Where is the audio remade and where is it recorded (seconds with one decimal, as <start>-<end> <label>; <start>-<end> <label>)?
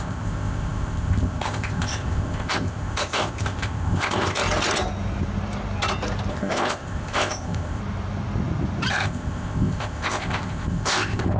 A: 0.0-4.4 remade; 4.4-6.3 recorded; 6.3-7.8 remade; 7.8-8.9 recorded; 8.9-11.4 remade